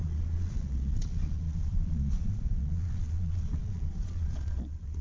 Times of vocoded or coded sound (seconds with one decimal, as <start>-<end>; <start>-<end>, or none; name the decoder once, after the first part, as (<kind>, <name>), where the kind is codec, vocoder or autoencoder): 0.0-5.0 (vocoder, Vocos)